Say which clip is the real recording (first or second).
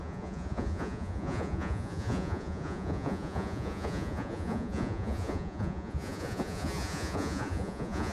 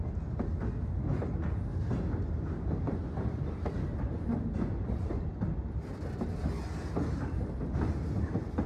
second